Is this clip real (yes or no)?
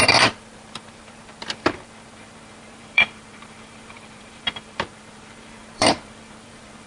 no